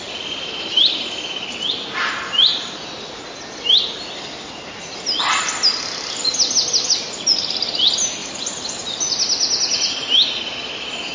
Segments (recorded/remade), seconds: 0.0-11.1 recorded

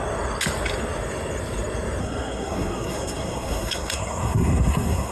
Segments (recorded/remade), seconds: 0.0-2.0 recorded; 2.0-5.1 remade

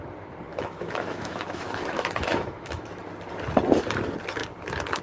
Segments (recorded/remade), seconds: 0.0-0.5 recorded; 0.5-3.0 remade; 3.0-5.0 recorded

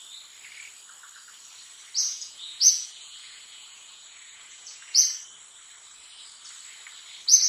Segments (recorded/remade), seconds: 0.0-2.1 recorded; 2.1-5.0 remade; 5.0-7.5 recorded

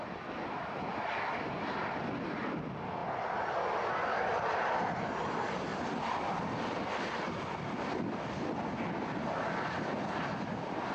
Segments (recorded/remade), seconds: 0.0-10.9 recorded